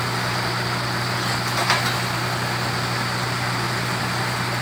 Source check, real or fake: real